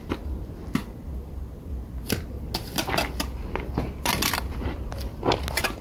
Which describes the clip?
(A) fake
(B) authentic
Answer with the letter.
B